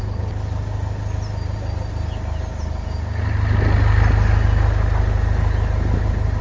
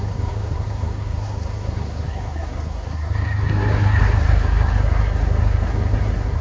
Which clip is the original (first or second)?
first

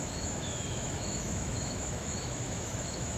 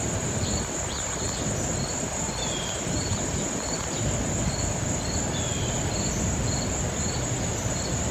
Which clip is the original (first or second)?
second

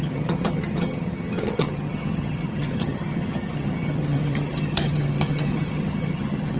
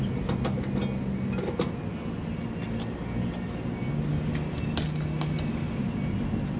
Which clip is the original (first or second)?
second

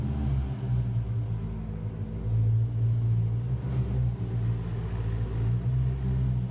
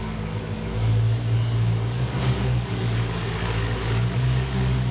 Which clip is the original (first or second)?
first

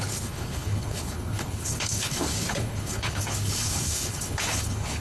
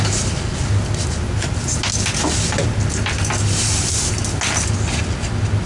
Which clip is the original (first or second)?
second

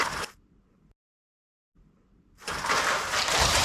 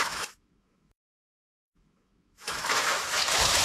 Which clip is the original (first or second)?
first